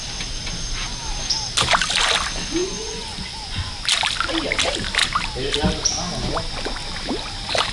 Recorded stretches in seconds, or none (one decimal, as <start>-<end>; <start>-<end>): 0.0-2.6; 3.7-7.7